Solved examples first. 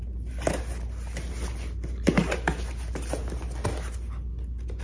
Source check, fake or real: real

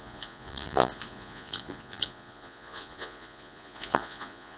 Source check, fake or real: fake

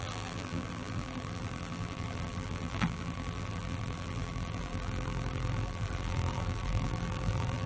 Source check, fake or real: fake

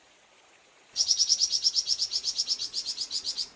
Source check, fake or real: fake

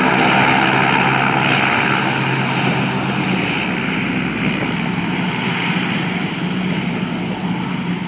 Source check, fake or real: real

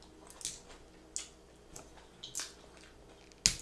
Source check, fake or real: real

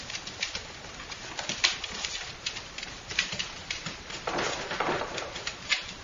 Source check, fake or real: fake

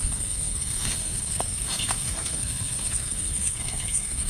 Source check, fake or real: fake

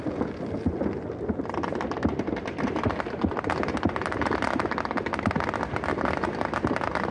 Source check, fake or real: real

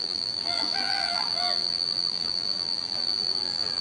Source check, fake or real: fake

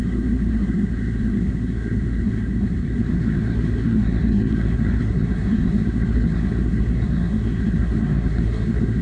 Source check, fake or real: fake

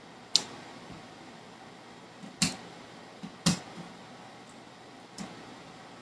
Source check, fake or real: real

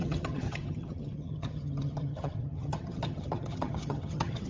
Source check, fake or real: fake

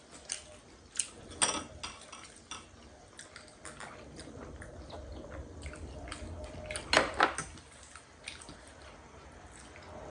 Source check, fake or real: real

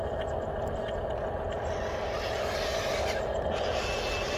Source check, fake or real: real